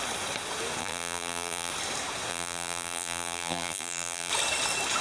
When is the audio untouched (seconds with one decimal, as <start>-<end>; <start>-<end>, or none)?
0.0-0.8; 1.7-2.3; 4.3-5.0